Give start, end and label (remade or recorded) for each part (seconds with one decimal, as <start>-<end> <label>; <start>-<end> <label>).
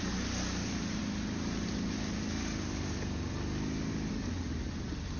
0.0-5.2 recorded